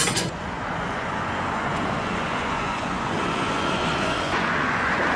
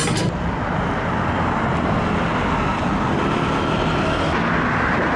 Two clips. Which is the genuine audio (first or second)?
second